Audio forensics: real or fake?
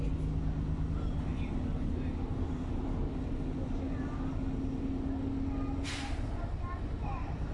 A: real